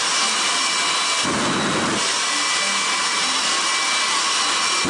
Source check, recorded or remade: recorded